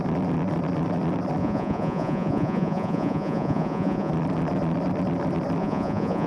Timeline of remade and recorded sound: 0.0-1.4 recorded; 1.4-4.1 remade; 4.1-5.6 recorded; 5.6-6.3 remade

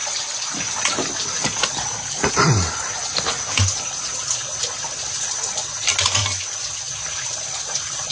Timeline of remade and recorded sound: 0.0-0.8 remade; 0.8-8.1 recorded

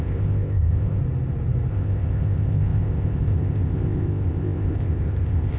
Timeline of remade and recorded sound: 0.0-1.0 remade; 1.0-1.7 recorded; 1.7-5.6 remade

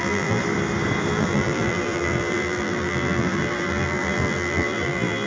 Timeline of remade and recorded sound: 0.0-0.4 remade; 0.4-1.1 recorded; 1.1-5.3 remade

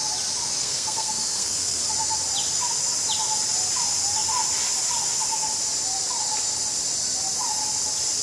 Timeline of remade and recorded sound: 0.0-0.6 recorded; 0.6-1.9 remade; 1.9-8.2 recorded